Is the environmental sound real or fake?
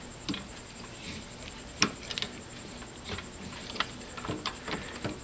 real